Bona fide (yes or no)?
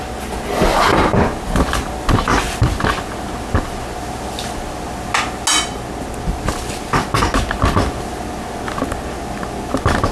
yes